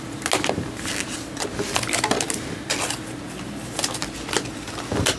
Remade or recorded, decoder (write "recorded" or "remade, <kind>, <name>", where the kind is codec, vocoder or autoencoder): recorded